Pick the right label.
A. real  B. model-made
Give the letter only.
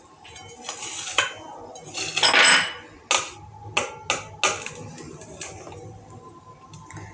A